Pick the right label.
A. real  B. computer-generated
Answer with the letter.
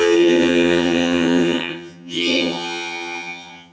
B